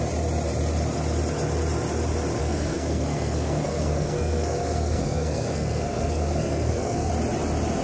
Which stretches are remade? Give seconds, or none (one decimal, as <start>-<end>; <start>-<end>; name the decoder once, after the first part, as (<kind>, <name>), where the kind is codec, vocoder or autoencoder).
2.4-7.1 (codec, SNAC)